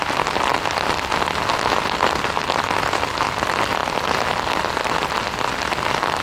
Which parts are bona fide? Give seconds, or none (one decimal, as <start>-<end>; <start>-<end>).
0.0-6.2